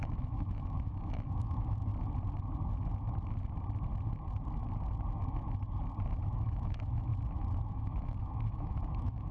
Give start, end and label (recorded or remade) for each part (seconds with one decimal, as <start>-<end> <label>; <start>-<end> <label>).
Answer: 0.0-1.9 remade; 1.9-6.2 recorded; 6.2-7.1 remade; 7.1-7.7 recorded; 7.7-9.3 remade